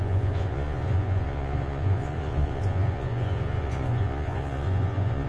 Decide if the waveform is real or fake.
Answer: fake